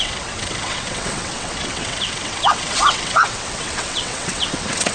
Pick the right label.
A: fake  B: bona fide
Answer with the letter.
A